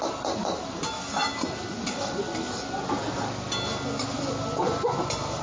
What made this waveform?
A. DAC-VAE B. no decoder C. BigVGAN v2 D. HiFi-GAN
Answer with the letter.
B